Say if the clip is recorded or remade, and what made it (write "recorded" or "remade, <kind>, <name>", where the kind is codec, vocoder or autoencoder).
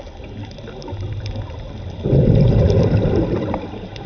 recorded